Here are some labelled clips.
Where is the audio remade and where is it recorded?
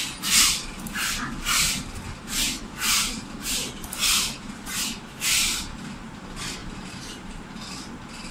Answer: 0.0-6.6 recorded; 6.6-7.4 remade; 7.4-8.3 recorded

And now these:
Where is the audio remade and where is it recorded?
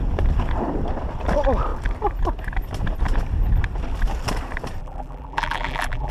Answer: 0.0-4.8 recorded; 4.8-6.1 remade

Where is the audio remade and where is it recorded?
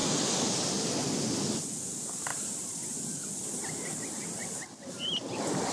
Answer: 0.0-5.7 recorded